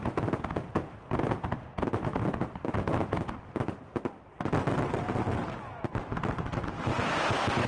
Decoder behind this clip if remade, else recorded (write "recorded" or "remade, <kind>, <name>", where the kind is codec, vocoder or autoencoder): recorded